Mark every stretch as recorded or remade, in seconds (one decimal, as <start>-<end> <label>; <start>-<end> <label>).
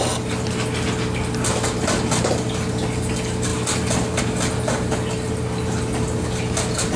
0.0-7.0 recorded